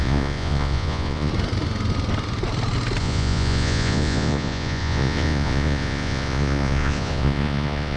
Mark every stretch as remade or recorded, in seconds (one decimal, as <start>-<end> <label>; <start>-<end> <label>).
0.0-1.3 remade; 1.3-3.0 recorded; 3.0-8.0 remade